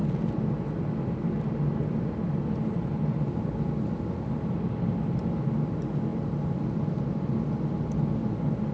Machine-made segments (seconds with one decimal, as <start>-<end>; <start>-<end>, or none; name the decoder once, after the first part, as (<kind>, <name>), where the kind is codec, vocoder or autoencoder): none